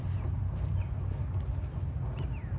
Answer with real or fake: real